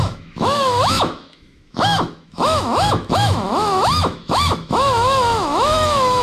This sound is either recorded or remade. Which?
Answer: remade